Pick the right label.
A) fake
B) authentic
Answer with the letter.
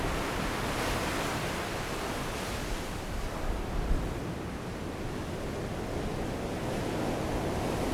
B